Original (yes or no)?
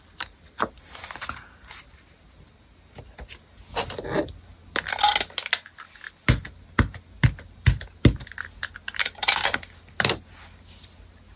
yes